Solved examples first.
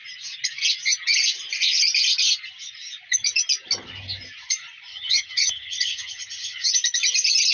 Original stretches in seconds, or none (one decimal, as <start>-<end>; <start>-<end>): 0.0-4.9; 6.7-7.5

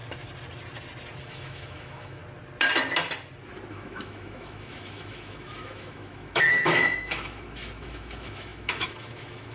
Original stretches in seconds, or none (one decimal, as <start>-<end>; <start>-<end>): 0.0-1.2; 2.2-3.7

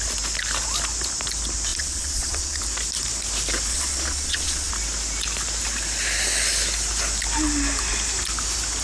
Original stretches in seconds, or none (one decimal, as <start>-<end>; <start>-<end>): 0.0-1.7; 2.6-3.7; 4.7-8.8